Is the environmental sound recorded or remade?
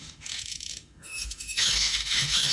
remade